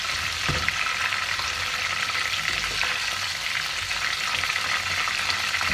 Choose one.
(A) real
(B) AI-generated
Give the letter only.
A